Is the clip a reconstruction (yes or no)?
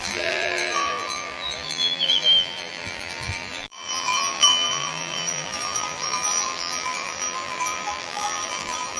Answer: yes